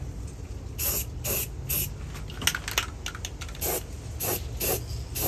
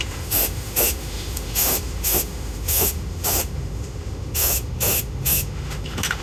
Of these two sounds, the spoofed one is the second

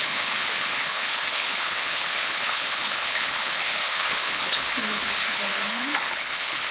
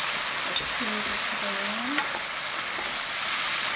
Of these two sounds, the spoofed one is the first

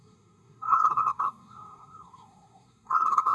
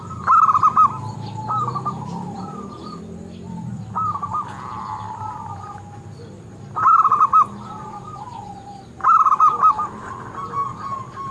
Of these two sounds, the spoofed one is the first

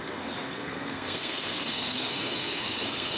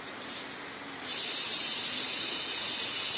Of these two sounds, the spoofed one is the first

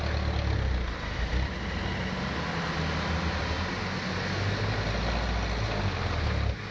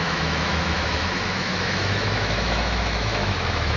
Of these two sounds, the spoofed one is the second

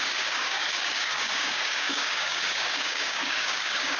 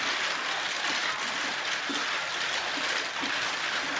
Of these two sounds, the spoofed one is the first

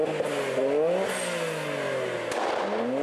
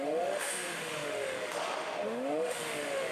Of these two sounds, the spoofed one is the second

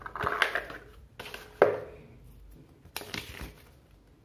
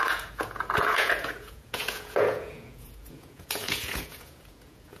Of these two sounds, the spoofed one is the second